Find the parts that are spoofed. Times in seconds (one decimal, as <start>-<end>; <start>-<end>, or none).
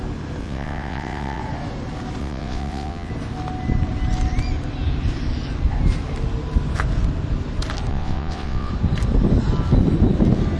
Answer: 0.4-1.4; 2.2-3.1; 7.9-8.7